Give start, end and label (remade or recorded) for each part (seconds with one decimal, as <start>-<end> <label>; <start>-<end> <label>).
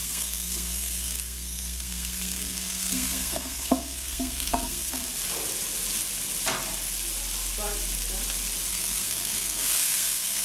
0.0-5.0 remade; 5.0-8.7 recorded; 8.7-10.4 remade